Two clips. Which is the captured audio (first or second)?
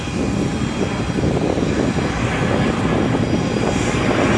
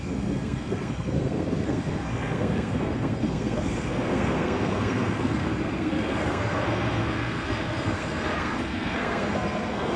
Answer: first